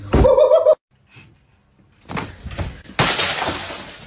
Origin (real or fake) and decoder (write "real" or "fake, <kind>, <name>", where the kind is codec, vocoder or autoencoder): real